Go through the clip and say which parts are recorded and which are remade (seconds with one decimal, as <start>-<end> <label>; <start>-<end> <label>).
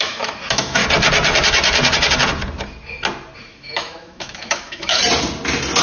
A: 0.0-0.8 remade; 0.8-3.4 recorded; 3.4-5.0 remade; 5.0-5.8 recorded